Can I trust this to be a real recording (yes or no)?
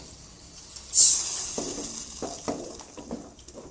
yes